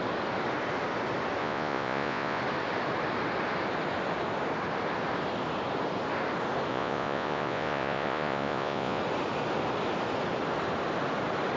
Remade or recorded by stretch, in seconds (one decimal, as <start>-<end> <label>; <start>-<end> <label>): 0.0-1.4 recorded; 1.4-2.4 remade; 2.4-6.7 recorded; 6.7-9.0 remade; 9.0-11.6 recorded